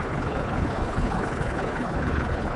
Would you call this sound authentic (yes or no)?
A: no